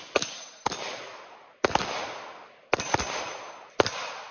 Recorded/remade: recorded